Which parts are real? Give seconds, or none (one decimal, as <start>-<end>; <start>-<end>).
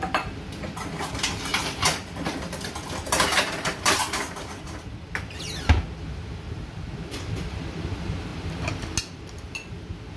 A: 0.0-1.5; 4.6-10.2